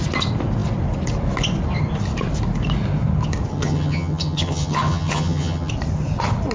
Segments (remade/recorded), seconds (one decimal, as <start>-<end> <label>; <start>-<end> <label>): 0.0-3.5 recorded; 3.5-5.7 remade; 5.7-6.5 recorded